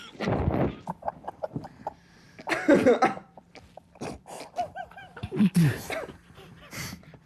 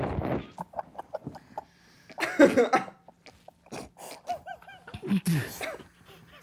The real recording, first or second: second